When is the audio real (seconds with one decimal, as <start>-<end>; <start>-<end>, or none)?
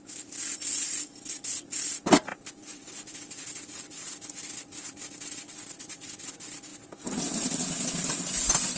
0.0-8.8